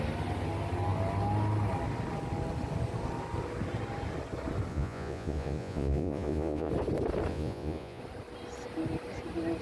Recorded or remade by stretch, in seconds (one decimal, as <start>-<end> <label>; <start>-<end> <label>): 0.0-4.7 recorded; 4.7-6.7 remade; 6.7-7.3 recorded; 7.3-8.0 remade; 8.0-9.6 recorded